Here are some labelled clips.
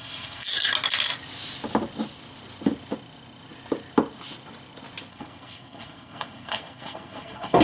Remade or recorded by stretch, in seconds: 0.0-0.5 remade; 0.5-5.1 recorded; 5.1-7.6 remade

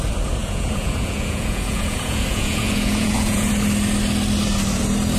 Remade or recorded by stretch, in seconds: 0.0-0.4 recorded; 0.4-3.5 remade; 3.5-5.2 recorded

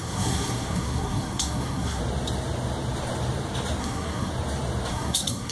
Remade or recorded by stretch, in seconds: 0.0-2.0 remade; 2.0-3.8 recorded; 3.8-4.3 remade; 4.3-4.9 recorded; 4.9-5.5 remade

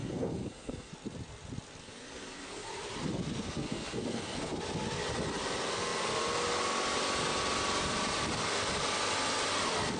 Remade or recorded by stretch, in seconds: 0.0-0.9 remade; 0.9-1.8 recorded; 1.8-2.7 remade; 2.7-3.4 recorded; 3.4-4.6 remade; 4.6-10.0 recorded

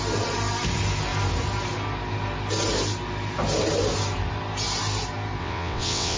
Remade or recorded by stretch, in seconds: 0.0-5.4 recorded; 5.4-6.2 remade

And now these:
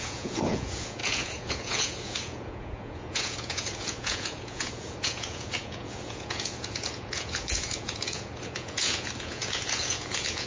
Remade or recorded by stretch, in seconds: 0.0-10.5 remade

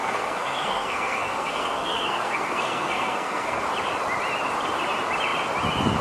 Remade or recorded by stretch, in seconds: 0.0-3.6 remade; 3.6-6.0 recorded